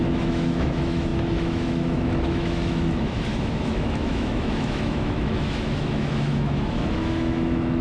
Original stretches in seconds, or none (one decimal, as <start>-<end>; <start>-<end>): none